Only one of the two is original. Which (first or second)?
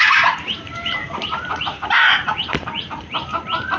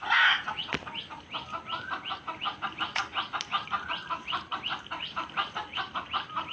second